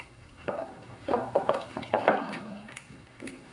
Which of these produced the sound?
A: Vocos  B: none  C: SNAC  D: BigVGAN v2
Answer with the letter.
C